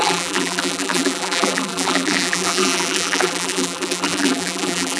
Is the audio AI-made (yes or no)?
yes